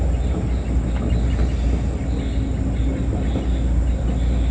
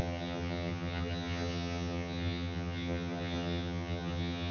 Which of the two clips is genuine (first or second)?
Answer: first